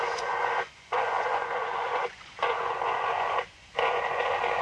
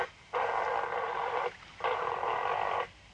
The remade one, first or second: first